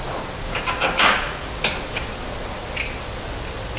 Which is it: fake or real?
real